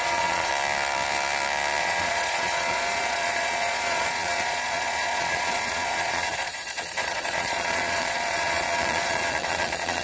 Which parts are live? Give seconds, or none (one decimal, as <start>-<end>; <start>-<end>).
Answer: 0.5-1.8